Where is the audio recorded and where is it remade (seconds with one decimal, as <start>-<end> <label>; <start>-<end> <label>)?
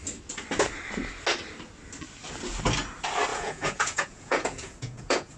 0.0-3.3 recorded; 3.3-5.4 remade